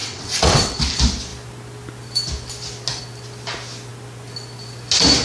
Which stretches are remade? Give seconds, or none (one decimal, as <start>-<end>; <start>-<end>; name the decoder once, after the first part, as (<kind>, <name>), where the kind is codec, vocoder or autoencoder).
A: 0.0-0.9 (vocoder, WaveNeXt)